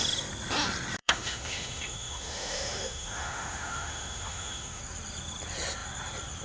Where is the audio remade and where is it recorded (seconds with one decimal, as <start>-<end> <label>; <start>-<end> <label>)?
0.0-1.0 recorded; 1.0-4.8 remade; 4.8-6.4 recorded